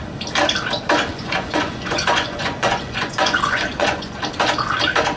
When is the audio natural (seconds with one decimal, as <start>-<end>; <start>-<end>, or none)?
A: 0.0-1.1; 4.2-5.2